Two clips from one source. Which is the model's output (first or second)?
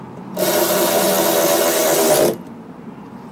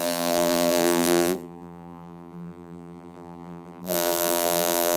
second